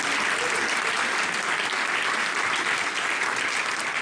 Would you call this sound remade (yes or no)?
no